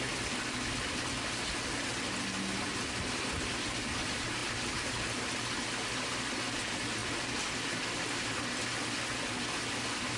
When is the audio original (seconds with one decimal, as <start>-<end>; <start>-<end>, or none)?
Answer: 0.0-10.2